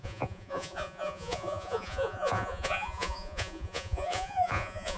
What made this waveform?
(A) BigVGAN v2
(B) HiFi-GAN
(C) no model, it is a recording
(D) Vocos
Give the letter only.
D